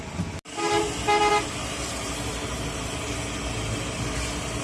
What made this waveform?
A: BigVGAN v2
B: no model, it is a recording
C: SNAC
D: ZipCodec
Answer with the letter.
B